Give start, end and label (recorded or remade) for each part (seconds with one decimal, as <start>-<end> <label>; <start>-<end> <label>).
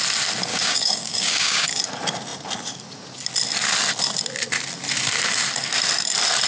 0.0-0.5 recorded; 0.5-1.8 remade; 1.8-6.5 recorded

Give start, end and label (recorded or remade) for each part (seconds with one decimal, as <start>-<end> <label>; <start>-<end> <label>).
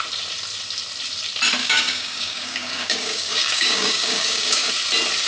0.0-1.6 recorded; 1.6-4.7 remade; 4.7-5.3 recorded